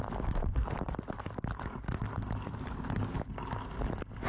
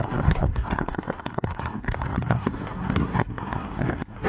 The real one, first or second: first